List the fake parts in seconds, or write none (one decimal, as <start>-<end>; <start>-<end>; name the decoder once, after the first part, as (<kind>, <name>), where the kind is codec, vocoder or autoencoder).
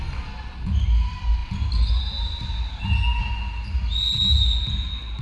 none